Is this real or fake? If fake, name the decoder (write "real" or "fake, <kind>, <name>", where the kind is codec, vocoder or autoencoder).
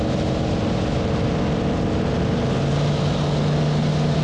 real